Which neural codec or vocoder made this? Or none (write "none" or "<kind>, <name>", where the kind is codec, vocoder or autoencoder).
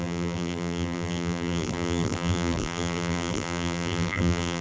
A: vocoder, BigVGAN v2